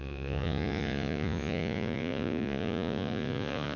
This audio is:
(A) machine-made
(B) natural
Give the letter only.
A